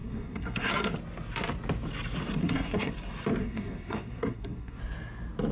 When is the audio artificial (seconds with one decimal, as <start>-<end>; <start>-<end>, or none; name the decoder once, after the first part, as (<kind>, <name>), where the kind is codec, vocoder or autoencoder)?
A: 0.0-0.7 (codec, SNAC); 2.4-2.9; 3.4-4.8